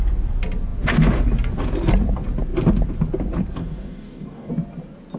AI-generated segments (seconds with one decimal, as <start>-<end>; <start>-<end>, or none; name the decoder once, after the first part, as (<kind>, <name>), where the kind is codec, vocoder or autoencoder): 3.6-4.5 (codec, DAC)